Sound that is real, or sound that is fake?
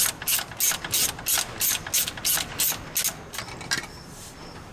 real